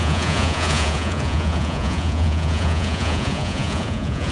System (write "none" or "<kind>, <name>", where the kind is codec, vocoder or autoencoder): vocoder, Vocos